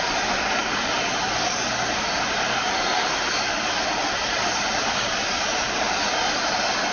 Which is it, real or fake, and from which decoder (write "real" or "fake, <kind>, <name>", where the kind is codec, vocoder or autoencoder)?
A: real